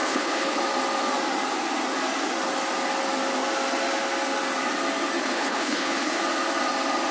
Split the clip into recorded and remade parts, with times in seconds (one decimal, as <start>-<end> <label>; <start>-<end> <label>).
0.0-0.6 remade; 0.6-5.2 recorded; 5.2-6.2 remade; 6.2-7.1 recorded